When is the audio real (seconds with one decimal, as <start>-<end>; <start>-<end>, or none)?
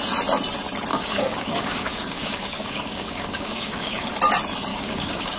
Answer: 0.0-0.9; 4.1-4.7